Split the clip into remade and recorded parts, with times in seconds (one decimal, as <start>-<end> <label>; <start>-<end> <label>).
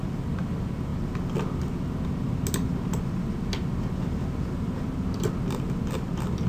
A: 0.0-6.5 recorded